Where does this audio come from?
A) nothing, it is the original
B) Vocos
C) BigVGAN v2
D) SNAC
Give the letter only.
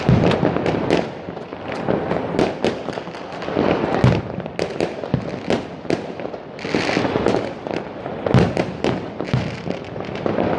A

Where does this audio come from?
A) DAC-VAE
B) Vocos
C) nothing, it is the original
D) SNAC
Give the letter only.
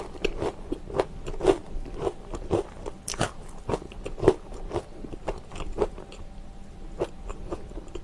C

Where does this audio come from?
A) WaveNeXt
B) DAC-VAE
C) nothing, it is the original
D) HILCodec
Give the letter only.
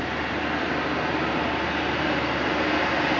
C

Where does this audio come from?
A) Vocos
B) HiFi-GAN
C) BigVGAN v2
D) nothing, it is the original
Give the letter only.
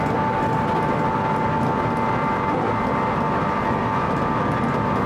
D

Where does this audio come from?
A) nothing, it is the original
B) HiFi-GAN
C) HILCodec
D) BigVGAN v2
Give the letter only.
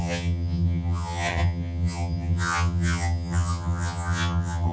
B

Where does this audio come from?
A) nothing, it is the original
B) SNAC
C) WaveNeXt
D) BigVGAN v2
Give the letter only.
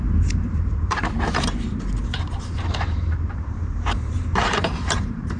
D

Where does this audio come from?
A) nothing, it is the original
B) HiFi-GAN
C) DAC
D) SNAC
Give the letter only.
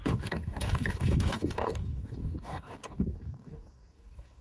C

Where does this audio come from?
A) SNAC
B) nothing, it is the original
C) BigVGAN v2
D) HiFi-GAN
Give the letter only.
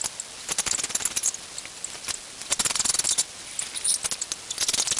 B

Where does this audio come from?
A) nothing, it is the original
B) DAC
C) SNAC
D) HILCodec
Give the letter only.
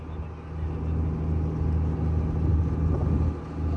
A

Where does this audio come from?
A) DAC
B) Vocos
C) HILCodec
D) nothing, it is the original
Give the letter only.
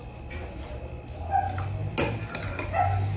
D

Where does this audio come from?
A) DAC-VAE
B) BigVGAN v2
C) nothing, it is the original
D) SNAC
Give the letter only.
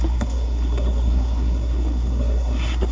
D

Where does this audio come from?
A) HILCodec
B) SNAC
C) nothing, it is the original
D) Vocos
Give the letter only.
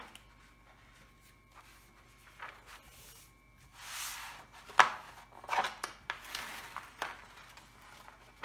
C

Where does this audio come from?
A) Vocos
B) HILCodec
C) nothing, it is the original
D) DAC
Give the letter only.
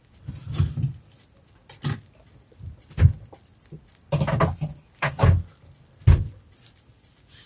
C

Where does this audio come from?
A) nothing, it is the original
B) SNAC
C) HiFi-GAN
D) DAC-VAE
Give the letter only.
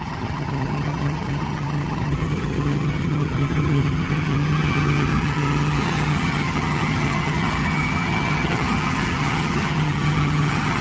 C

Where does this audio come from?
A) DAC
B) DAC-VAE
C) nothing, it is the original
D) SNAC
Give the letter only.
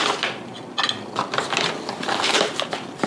C